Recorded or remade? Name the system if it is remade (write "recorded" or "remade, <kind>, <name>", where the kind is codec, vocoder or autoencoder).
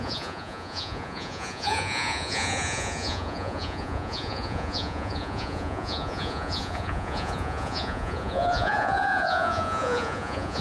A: remade, vocoder, Vocos